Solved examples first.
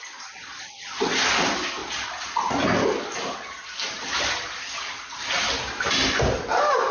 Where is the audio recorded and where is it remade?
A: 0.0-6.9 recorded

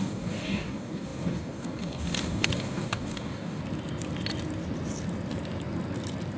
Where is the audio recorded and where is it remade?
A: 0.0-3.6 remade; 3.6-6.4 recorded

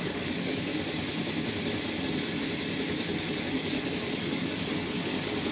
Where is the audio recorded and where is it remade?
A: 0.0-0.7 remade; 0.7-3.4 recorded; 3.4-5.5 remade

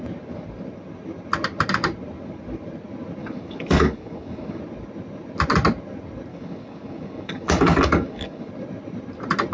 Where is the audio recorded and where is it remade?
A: 0.0-3.2 recorded; 3.2-4.6 remade; 4.6-6.3 recorded; 6.3-8.5 remade; 8.5-9.5 recorded

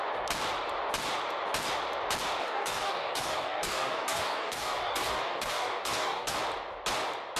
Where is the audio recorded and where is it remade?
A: 0.0-2.4 recorded; 2.4-6.4 remade; 6.4-7.4 recorded

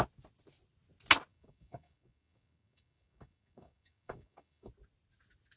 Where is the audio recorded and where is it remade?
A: 0.0-1.3 recorded; 1.3-4.7 remade; 4.7-5.6 recorded